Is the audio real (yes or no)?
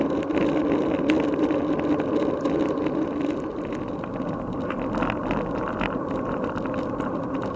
yes